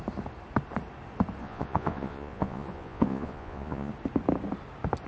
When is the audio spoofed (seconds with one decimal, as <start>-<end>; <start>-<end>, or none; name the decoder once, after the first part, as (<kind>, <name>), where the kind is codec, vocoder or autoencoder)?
1.4-3.9 (vocoder, Vocos)